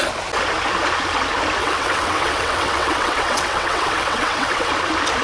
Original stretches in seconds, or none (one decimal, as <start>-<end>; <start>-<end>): 0.0-1.6; 4.7-5.2

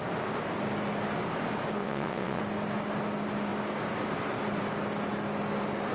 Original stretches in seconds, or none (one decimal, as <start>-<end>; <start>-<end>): 0.0-1.8; 2.4-5.9

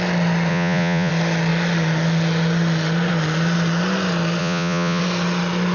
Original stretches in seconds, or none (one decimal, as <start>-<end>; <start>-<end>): 0.0-0.5; 1.1-4.4; 5.0-5.7

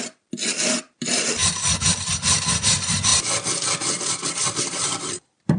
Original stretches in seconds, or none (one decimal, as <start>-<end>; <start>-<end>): 1.4-2.0; 3.1-4.3

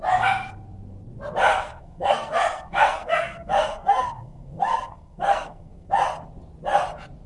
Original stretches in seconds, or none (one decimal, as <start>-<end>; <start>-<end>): 0.0-1.5; 5.9-7.3

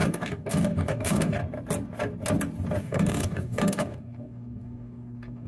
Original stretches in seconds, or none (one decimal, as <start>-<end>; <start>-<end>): 1.4-2.8